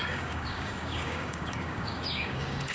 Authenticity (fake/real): fake